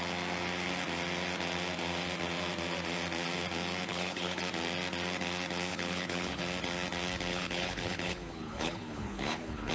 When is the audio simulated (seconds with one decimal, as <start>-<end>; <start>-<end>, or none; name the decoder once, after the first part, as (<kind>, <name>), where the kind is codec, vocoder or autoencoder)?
3.9-4.4 (codec, HILCodec); 5.7-6.4; 7.3-9.7